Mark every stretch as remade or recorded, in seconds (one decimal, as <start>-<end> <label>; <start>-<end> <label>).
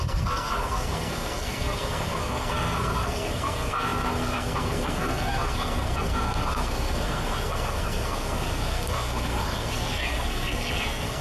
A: 0.0-11.2 remade